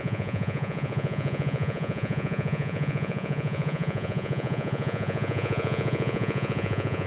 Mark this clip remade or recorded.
remade